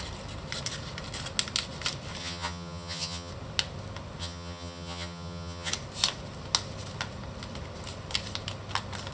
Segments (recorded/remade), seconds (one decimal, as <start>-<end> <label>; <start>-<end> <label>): 0.0-2.2 recorded; 2.2-3.3 remade; 3.3-4.2 recorded; 4.2-5.7 remade; 5.7-9.1 recorded